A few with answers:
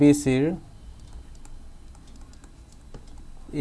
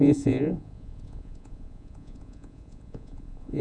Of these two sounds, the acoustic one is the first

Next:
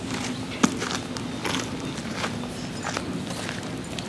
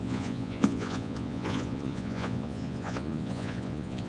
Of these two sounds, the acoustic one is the first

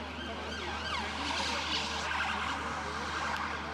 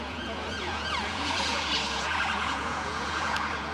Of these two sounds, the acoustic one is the first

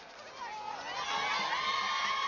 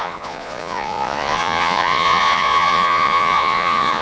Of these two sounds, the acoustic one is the first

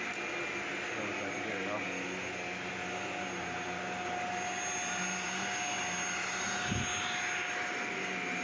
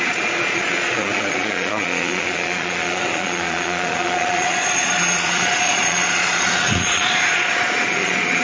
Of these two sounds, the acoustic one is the first